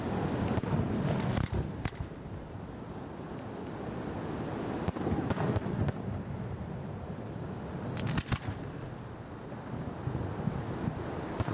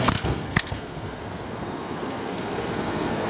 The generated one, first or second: second